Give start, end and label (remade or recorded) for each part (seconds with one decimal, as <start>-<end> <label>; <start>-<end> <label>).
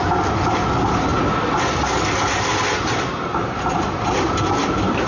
0.0-5.1 recorded